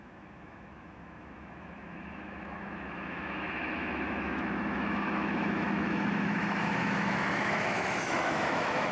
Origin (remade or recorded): remade